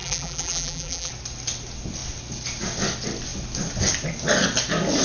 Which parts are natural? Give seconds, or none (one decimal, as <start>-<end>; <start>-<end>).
1.1-5.0